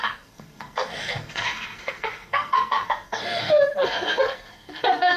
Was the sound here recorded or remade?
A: remade